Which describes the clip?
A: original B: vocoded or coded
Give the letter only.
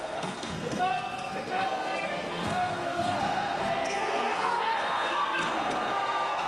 B